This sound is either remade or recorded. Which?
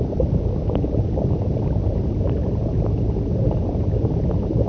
recorded